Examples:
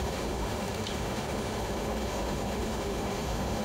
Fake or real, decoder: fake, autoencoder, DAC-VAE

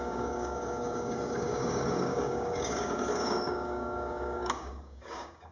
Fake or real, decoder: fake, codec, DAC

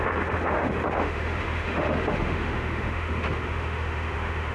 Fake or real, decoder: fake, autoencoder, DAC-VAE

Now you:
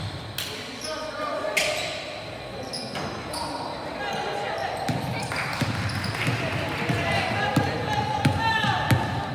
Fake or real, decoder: real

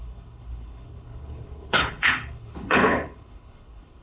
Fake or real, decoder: fake, codec, HILCodec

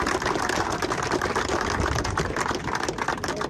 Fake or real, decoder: real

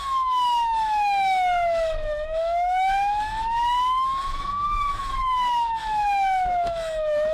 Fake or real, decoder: fake, autoencoder, DAC-VAE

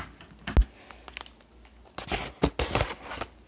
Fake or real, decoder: real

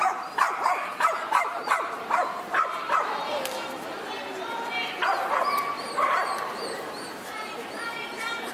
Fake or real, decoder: fake, vocoder, BigVGAN v2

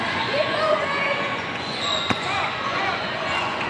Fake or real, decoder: fake, vocoder, Vocos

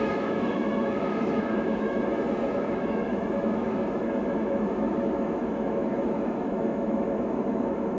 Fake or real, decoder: fake, autoencoder, DAC-VAE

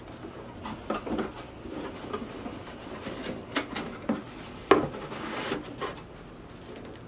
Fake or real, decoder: real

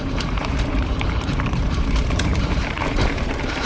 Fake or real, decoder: fake, vocoder, BigVGAN v2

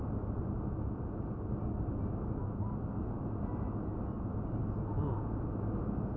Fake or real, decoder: real